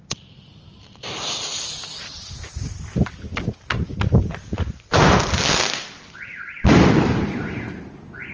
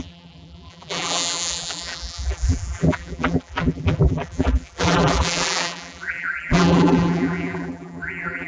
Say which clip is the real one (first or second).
first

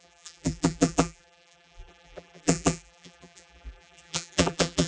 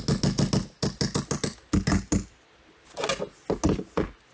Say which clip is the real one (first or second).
second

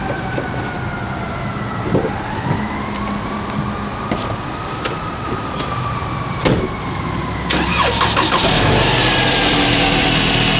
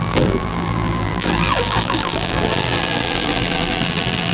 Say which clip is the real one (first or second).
first